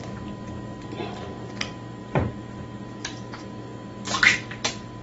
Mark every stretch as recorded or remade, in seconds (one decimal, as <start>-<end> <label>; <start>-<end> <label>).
0.0-5.0 recorded